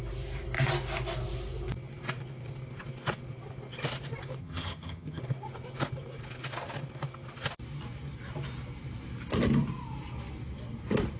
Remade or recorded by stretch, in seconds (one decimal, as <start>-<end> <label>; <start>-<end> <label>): 0.0-4.4 recorded; 4.4-5.2 remade; 5.2-11.2 recorded